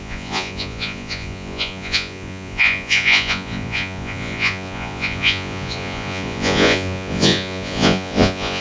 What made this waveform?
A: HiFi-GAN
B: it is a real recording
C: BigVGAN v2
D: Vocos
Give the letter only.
D